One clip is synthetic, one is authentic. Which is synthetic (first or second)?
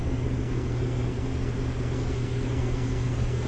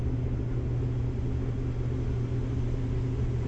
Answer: first